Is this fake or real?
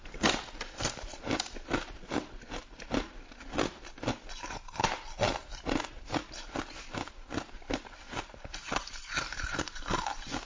real